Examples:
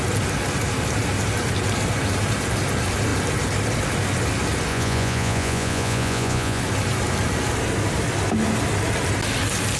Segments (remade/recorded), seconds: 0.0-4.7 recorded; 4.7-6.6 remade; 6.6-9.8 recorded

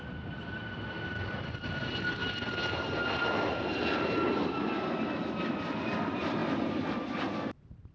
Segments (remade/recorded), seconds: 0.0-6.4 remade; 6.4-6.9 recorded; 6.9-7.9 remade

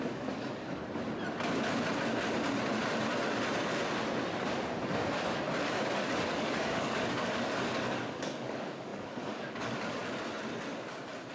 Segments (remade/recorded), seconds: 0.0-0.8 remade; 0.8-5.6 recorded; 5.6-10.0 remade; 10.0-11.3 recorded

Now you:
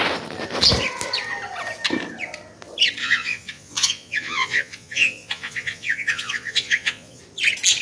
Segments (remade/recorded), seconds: 0.0-3.0 recorded; 3.0-7.2 remade; 7.2-7.8 recorded

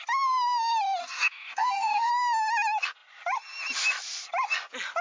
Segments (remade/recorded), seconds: 0.0-1.0 recorded; 1.0-2.1 remade; 2.1-5.0 recorded